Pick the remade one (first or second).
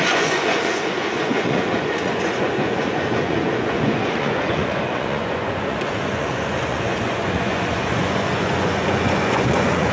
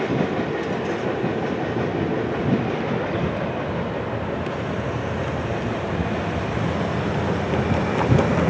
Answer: first